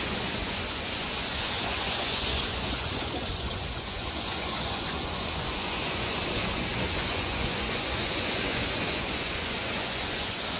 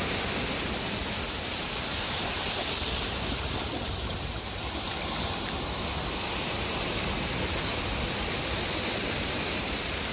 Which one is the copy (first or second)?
first